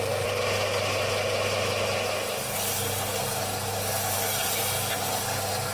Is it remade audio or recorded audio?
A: recorded